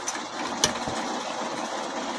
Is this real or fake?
real